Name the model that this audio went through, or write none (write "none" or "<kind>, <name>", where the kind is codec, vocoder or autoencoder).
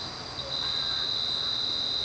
none